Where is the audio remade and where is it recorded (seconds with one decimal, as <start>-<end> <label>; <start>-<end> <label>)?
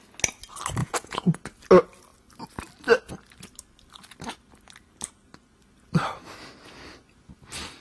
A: 0.0-0.8 recorded; 0.8-1.4 remade; 1.4-7.8 recorded